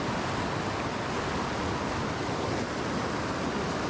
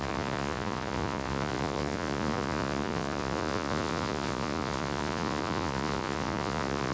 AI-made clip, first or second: second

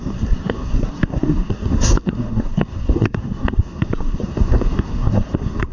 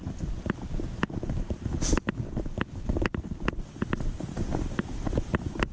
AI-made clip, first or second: first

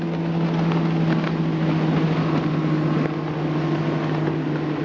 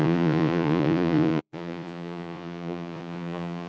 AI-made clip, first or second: second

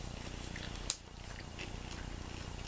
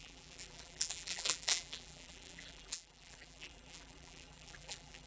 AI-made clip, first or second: second